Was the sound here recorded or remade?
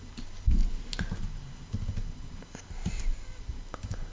recorded